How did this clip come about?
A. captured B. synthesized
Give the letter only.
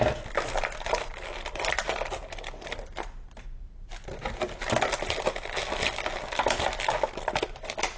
A